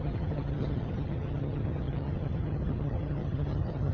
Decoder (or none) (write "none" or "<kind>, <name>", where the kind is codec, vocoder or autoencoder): vocoder, HiFi-GAN